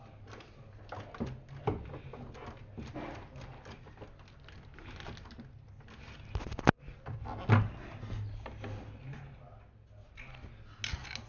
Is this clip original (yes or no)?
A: yes